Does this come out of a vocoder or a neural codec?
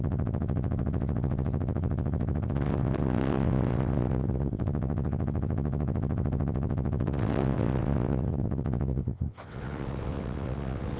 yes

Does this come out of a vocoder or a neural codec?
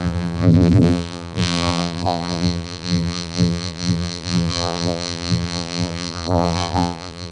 yes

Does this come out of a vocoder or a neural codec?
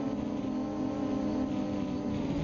no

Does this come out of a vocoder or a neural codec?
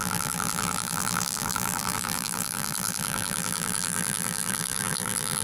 yes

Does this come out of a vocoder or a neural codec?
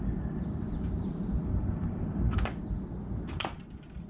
no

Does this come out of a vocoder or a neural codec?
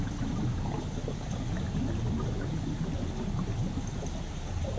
no